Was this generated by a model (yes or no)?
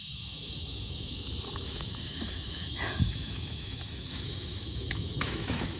yes